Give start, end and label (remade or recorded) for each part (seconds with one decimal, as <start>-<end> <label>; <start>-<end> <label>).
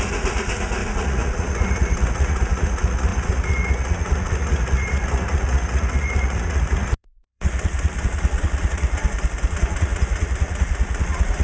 0.0-9.0 remade; 9.0-9.5 recorded; 9.5-11.4 remade